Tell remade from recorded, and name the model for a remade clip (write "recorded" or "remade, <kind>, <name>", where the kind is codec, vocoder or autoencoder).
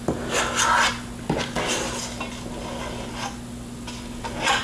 recorded